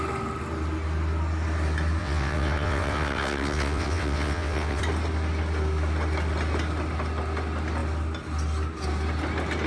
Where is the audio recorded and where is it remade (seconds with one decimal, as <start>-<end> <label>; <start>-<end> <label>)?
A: 0.0-2.0 recorded; 2.0-4.8 remade; 4.8-9.7 recorded